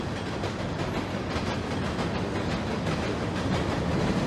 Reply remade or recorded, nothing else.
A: recorded